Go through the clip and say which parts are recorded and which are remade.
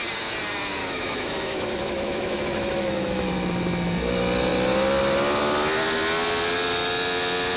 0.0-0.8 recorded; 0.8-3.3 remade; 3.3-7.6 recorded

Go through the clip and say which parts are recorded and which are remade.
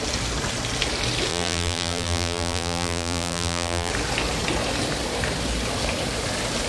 0.0-1.3 recorded; 1.3-3.9 remade; 3.9-6.7 recorded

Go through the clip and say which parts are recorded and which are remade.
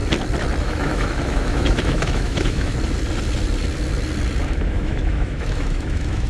0.0-0.6 recorded; 0.6-2.7 remade; 2.7-4.4 recorded; 4.4-6.3 remade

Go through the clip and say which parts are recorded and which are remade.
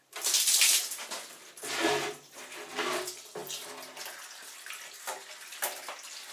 0.0-6.3 recorded